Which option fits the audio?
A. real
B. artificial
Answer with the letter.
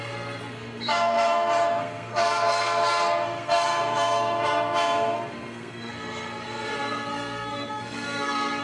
B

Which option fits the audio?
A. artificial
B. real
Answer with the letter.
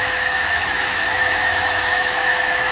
A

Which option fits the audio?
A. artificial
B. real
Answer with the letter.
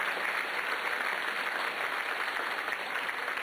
B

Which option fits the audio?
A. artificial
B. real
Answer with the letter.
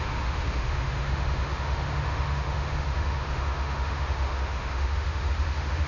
A